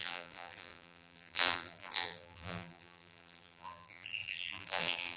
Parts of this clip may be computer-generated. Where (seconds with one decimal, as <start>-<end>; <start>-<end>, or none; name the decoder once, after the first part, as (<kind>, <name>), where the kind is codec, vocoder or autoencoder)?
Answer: 0.0-5.2 (vocoder, BigVGAN v2)